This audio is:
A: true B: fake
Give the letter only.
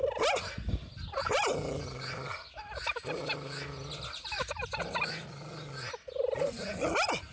A